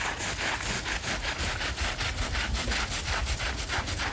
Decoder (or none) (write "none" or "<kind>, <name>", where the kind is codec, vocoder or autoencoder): none